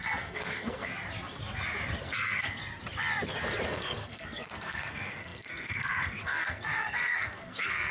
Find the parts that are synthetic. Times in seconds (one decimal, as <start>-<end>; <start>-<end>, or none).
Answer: 0.0-0.9; 2.0-2.6; 3.7-7.9

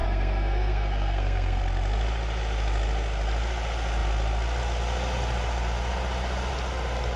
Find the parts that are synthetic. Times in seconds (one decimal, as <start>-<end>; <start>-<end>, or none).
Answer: 0.0-1.6

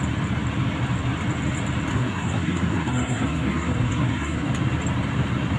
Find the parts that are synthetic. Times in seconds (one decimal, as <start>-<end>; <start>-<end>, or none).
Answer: 1.9-4.5

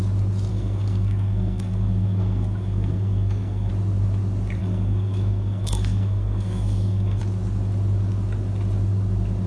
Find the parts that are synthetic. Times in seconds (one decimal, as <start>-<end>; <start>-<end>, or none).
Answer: 0.5-3.7; 4.6-7.2

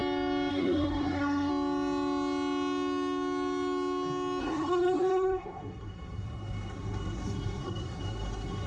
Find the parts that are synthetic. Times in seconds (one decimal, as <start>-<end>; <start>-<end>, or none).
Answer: 0.5-1.5; 4.4-8.7

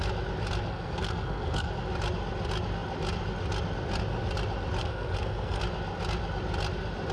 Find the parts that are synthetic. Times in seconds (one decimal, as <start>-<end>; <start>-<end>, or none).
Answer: 0.7-1.7; 4.8-5.6

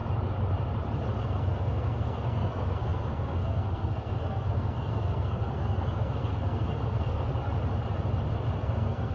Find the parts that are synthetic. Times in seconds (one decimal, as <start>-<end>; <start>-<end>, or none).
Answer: 1.2-7.3; 8.6-9.1

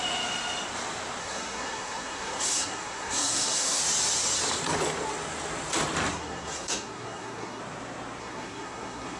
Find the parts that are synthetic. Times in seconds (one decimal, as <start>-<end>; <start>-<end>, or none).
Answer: 1.2-3.8; 6.1-7.6; 8.2-9.2